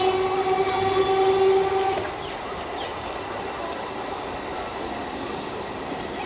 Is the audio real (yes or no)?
yes